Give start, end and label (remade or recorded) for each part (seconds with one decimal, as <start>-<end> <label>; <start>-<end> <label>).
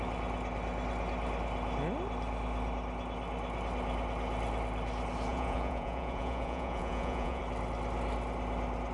0.0-5.3 recorded; 5.3-7.4 remade; 7.4-8.9 recorded